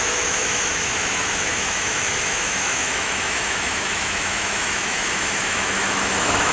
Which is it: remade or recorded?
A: remade